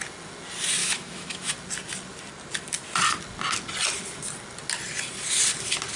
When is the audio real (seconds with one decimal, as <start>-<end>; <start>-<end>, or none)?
0.0-0.8; 1.5-6.0